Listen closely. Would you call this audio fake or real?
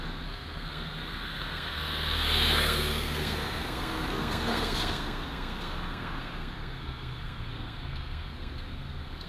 fake